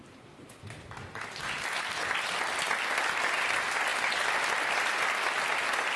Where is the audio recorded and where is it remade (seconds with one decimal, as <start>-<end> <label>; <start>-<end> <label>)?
0.0-6.0 recorded